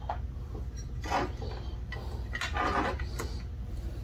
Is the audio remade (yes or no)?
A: no